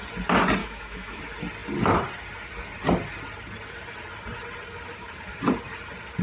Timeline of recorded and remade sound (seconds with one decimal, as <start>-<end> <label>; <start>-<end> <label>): 0.0-0.6 recorded; 0.6-1.2 remade; 1.2-6.2 recorded

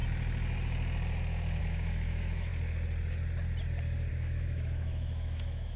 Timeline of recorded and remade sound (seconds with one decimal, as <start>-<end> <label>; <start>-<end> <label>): 0.0-1.6 recorded; 1.6-2.5 remade; 2.5-4.1 recorded; 4.1-5.8 remade

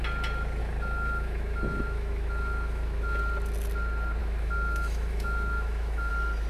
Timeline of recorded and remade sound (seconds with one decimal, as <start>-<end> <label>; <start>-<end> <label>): 0.0-0.6 recorded; 0.6-3.2 remade; 3.2-4.2 recorded; 4.2-6.1 remade; 6.1-6.5 recorded

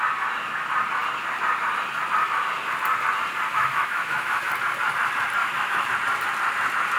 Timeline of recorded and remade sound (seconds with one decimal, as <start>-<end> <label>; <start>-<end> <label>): 0.0-3.5 recorded; 3.5-4.5 remade; 4.5-5.4 recorded; 5.4-5.9 remade; 5.9-7.0 recorded

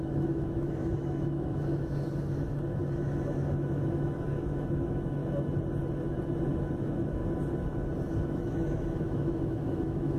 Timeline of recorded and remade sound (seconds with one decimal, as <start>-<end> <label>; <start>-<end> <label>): 0.0-5.2 remade; 5.2-6.5 recorded; 6.5-7.2 remade; 7.2-8.3 recorded; 8.3-10.2 remade